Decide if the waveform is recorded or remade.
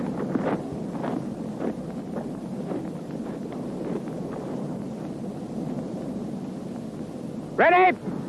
recorded